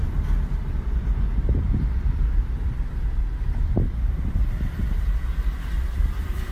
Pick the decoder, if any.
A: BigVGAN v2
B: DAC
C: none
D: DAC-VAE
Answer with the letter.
A